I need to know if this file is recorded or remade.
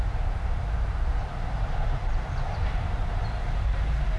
remade